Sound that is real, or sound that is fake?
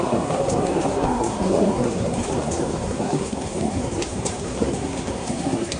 fake